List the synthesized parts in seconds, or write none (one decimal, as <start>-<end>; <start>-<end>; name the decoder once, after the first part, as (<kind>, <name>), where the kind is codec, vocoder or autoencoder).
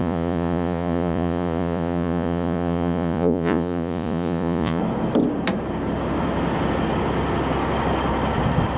0.0-4.8 (vocoder, Vocos)